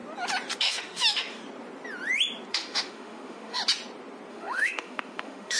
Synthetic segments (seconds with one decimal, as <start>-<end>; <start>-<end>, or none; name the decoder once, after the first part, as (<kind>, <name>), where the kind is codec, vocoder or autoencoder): 0.6-1.4 (autoencoder, DAC-VAE); 2.5-3.6; 4.3-5.6